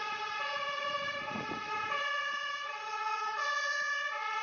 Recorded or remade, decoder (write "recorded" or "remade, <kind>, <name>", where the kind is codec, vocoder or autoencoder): remade, vocoder, Vocos